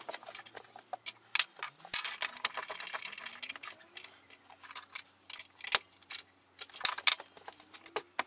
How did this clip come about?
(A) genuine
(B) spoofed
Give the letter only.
A